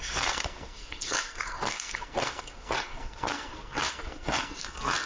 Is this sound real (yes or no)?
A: no